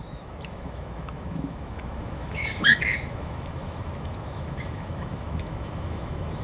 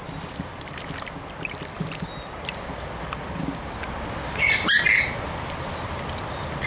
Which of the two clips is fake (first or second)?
first